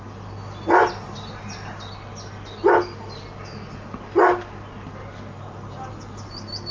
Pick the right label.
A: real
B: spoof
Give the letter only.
A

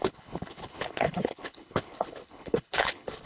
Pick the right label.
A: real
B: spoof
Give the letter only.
B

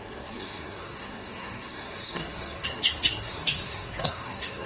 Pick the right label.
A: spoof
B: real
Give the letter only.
A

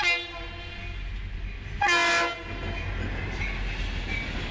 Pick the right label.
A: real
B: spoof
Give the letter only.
A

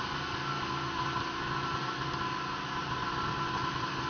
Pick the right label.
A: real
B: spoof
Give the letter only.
A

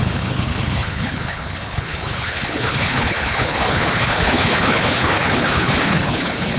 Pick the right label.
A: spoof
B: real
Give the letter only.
A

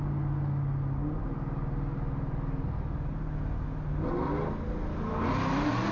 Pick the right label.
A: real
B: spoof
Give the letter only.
A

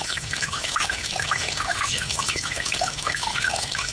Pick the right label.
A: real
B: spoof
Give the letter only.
B